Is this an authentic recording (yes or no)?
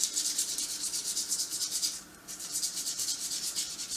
no